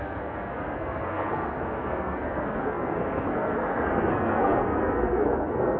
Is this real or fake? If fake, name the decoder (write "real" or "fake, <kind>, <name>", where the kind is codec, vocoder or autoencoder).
fake, codec, SNAC